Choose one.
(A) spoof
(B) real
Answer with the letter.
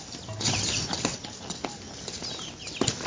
B